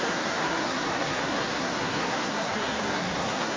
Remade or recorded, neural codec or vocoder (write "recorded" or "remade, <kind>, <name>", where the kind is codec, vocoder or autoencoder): remade, codec, SNAC